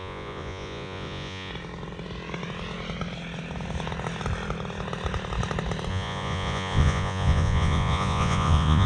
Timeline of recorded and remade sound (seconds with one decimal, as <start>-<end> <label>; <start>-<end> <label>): 0.0-1.5 remade; 1.5-5.9 recorded; 5.9-8.9 remade